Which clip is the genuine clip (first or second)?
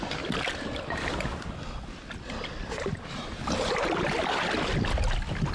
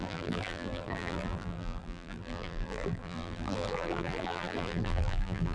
first